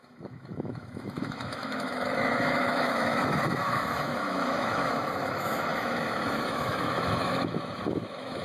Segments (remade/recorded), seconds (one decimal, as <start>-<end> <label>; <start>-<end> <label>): 0.0-8.4 remade